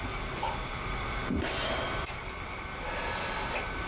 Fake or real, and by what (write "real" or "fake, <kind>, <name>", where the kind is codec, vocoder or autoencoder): real